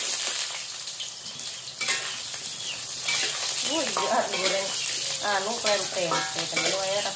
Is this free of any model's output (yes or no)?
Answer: yes